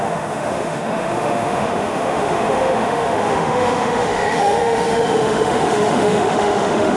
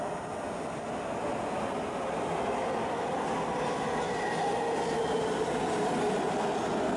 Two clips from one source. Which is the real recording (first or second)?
second